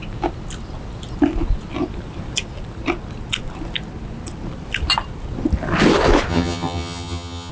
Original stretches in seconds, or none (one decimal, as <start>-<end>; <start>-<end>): 0.0-6.3